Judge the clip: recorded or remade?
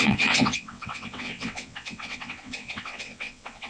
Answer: remade